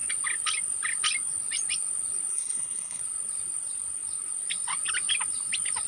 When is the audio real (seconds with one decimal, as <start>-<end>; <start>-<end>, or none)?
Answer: 0.0-2.3; 3.0-5.9